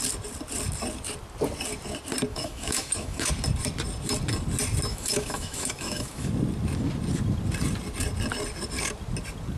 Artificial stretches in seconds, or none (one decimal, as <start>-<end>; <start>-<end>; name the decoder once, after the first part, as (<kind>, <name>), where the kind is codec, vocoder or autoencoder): 2.3-3.3 (autoencoder, DAC-VAE); 4.9-6.3